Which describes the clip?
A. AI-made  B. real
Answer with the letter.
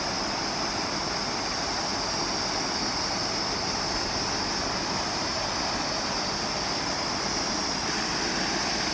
B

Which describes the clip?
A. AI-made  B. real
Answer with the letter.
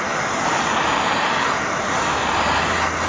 B